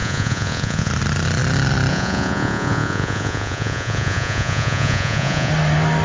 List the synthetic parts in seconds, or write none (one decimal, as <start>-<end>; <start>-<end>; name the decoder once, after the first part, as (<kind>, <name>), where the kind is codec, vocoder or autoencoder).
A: 0.0-0.9 (vocoder, Vocos); 1.9-5.5